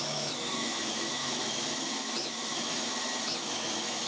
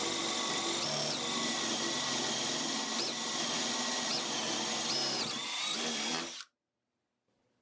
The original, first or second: second